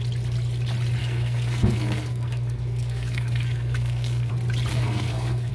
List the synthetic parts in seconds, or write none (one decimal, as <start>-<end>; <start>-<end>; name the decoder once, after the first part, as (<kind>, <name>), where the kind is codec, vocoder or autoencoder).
1.0-4.3 (codec, SNAC); 4.7-5.5